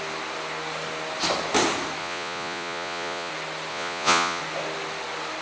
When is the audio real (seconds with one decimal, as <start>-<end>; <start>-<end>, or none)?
0.0-2.0; 3.3-3.7; 4.4-5.4